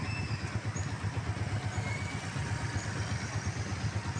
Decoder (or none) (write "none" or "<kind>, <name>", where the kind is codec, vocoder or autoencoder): none